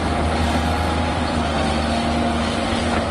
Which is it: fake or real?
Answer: real